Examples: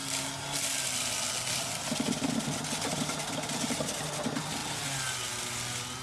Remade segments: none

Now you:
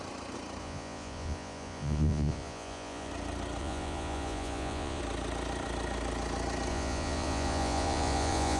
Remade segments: 0.6-3.1 (vocoder, Vocos); 3.6-5.0; 6.7-8.6

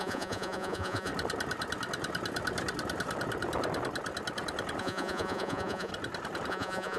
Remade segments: 0.0-1.1 (vocoder, Vocos); 4.8-5.9; 6.5-7.0

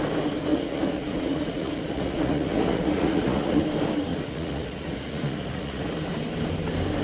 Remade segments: 0.5-3.6 (vocoder, Vocos); 4.1-5.9